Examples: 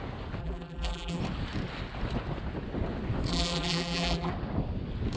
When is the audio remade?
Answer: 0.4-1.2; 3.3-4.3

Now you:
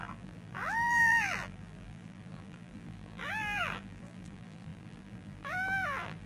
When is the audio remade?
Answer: 0.0-6.3

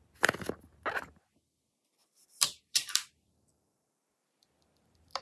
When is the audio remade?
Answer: 2.0-5.2

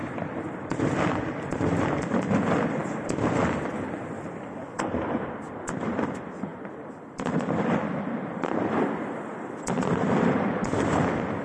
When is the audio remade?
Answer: 0.5-2.8; 3.7-11.4

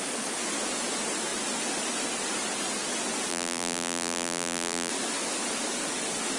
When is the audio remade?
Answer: 3.3-4.9

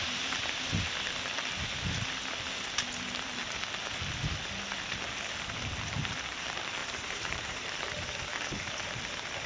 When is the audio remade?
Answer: 6.8-7.6

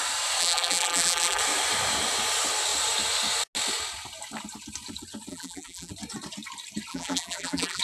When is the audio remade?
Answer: 0.4-1.4; 5.3-5.9; 6.9-7.8

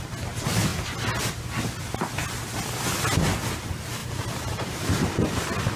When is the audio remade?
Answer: 4.0-5.1